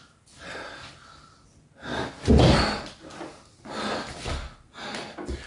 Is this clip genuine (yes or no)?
yes